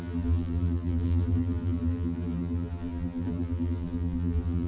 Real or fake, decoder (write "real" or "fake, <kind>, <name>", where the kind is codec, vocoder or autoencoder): fake, vocoder, BigVGAN v2